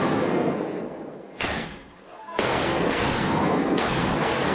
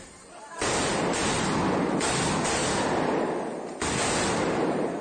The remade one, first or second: first